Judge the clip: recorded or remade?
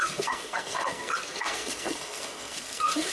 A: remade